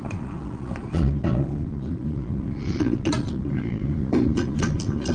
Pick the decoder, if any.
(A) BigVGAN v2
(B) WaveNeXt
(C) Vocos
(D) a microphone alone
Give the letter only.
C